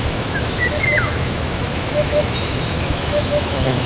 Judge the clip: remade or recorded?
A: remade